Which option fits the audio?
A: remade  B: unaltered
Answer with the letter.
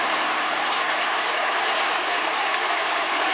B